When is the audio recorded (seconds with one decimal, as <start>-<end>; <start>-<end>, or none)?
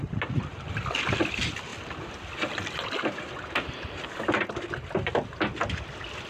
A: 0.0-6.3